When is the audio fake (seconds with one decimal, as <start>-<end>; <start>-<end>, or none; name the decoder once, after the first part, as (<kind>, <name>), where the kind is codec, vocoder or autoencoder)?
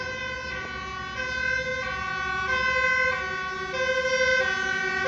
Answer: none